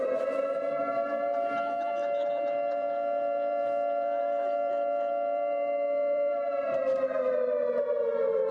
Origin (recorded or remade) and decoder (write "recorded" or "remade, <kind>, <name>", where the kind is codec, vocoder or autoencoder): remade, vocoder, BigVGAN v2